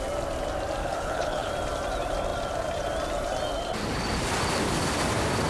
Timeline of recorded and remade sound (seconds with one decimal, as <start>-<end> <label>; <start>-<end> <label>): 0.0-0.8 recorded; 0.8-1.5 remade; 1.5-5.5 recorded